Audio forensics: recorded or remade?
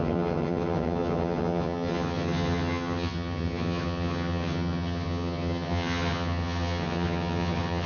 remade